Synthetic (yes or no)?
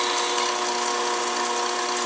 no